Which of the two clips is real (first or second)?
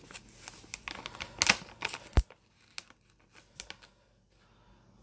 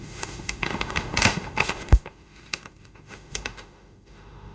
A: first